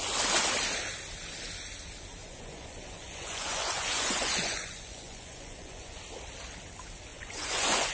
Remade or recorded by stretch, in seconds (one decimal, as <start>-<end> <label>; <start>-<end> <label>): 0.0-2.2 recorded; 2.2-6.0 remade; 6.0-7.1 recorded; 7.1-7.9 remade